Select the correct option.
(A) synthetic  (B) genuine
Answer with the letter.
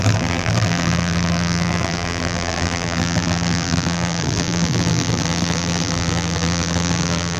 A